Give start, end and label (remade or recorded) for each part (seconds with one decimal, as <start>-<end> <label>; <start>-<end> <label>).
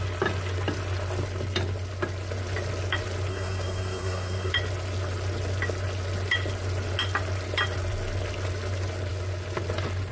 0.0-3.3 recorded; 3.3-4.5 remade; 4.5-10.1 recorded